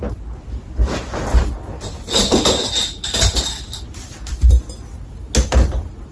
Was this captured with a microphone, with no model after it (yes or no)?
yes